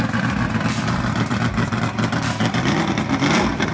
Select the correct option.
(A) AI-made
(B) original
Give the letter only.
A